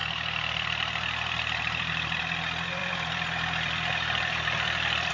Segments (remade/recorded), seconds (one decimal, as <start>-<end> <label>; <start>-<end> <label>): 0.0-2.2 remade; 2.2-2.8 recorded; 2.8-5.1 remade